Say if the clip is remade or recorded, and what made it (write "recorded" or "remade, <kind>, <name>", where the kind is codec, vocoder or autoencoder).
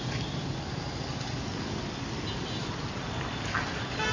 recorded